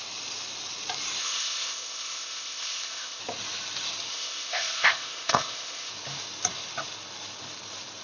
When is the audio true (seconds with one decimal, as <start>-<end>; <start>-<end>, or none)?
0.0-1.2; 3.2-4.1; 5.9-8.0